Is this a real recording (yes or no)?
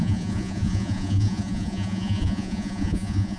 no